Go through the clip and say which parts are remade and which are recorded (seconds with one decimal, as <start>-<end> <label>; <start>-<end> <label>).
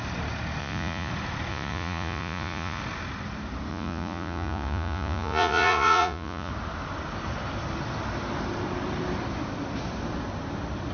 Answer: 0.0-0.6 recorded; 0.6-1.1 remade; 1.1-1.5 recorded; 1.5-2.8 remade; 2.8-3.7 recorded; 3.7-6.5 remade; 6.5-10.9 recorded